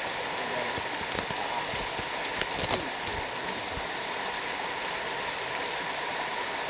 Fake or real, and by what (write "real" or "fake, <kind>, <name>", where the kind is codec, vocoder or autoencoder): real